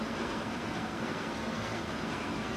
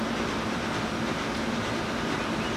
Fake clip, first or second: first